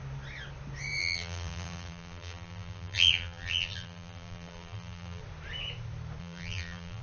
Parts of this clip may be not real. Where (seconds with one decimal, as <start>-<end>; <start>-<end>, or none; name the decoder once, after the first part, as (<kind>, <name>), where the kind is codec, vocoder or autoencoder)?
1.0-5.2 (vocoder, BigVGAN v2); 6.2-7.0